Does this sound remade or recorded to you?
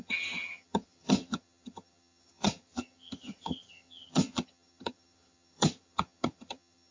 remade